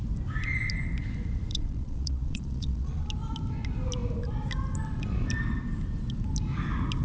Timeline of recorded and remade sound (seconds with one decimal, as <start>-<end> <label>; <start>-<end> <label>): 0.0-1.5 recorded; 1.5-3.1 remade; 3.1-7.0 recorded